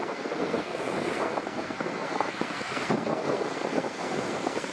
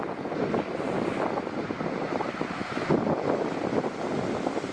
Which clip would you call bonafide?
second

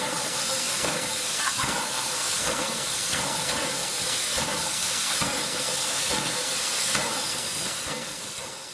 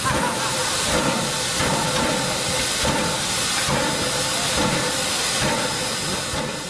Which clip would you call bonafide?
second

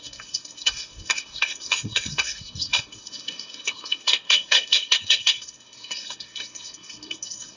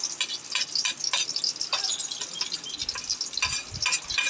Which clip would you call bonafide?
second